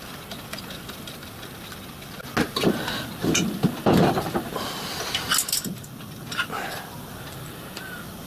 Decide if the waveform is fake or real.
real